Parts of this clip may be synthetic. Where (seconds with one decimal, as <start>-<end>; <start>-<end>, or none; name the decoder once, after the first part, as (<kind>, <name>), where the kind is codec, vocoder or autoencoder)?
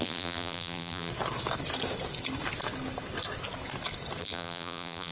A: 0.0-1.1 (vocoder, BigVGAN v2); 4.2-5.1